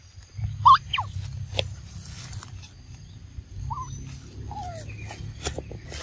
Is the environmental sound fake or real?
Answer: real